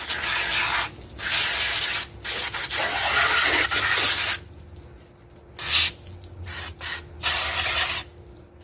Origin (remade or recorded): recorded